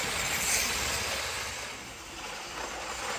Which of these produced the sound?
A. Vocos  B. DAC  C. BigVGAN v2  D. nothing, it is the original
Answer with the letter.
D